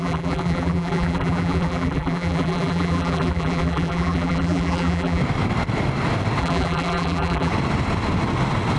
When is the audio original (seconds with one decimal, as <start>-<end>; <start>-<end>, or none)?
5.2-6.4; 7.5-8.8